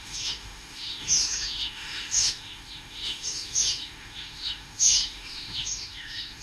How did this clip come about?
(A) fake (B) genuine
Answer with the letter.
A